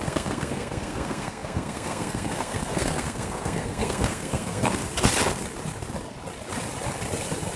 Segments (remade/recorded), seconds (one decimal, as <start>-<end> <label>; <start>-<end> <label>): 0.0-4.8 remade; 4.8-7.6 recorded